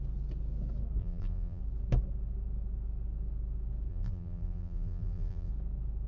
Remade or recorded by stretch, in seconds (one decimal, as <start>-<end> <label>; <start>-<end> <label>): 0.0-1.0 recorded; 1.0-1.6 remade; 1.6-3.9 recorded; 3.9-5.5 remade; 5.5-6.1 recorded